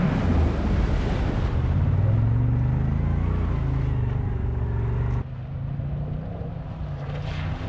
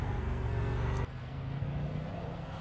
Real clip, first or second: first